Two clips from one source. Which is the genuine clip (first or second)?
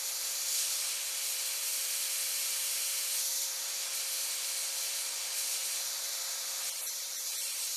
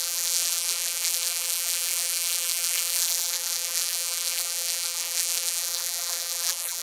first